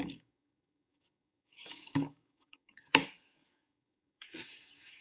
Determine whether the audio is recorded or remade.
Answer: remade